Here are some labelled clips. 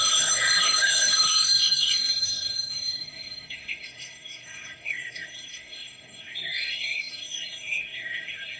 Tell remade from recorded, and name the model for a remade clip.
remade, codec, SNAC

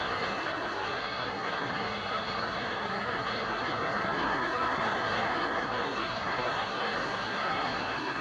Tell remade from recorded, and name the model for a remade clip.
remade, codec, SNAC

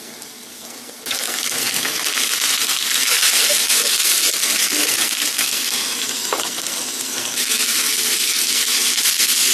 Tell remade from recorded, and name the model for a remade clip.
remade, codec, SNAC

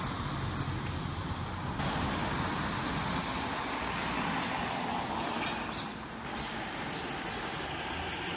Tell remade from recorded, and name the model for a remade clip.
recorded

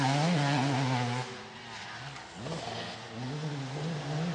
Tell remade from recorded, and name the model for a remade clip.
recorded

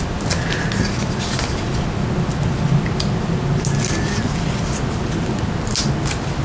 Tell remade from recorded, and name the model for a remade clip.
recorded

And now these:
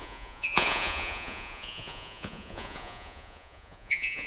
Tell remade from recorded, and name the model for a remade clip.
remade, vocoder, Vocos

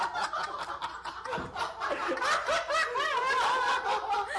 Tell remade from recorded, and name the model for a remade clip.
recorded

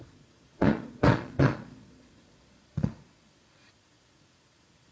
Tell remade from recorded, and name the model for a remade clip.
remade, vocoder, Vocos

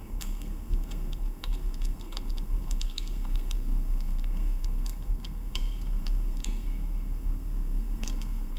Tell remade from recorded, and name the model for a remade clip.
remade, codec, SNAC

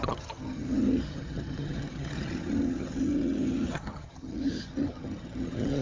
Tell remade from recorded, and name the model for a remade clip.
remade, vocoder, HiFi-GAN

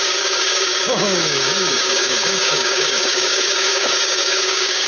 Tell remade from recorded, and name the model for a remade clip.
remade, codec, DAC